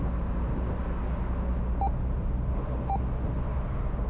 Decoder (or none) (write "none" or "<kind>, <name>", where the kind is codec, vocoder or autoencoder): none